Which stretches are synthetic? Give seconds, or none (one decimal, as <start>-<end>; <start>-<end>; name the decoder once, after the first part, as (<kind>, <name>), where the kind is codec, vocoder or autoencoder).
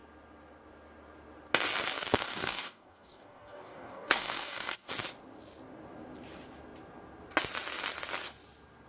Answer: 2.2-4.9 (codec, DAC)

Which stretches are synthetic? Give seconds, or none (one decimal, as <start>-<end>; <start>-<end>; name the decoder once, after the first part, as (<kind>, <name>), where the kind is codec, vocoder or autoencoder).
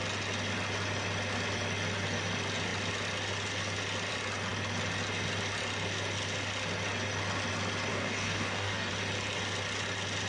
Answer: 7.9-8.9 (codec, DAC)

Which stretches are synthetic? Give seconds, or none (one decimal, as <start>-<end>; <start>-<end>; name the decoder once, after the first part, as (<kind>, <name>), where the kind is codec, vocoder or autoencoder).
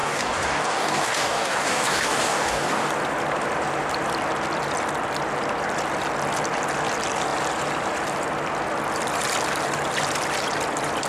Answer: 0.0-2.9 (codec, DAC)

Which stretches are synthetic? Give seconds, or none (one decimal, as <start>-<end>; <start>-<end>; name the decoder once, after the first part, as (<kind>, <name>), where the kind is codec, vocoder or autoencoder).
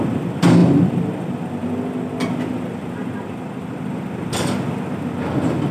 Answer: none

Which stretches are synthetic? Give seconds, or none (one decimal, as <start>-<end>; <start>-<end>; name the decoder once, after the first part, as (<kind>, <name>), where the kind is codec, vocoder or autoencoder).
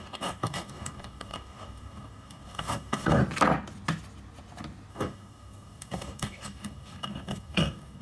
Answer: 0.0-3.2 (codec, DAC); 4.9-8.0